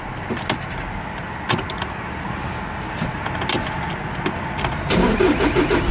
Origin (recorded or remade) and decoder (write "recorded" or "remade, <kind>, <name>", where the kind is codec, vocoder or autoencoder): recorded